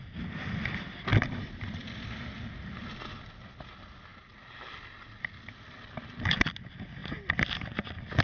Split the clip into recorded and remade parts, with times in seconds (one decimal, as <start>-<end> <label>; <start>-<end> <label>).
0.0-1.1 recorded; 1.1-2.2 remade; 2.2-4.1 recorded; 4.1-5.1 remade; 5.1-8.2 recorded